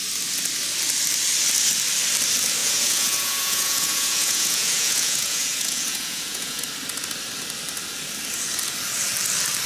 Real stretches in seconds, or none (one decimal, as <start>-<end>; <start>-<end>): 0.0-2.6; 6.6-9.7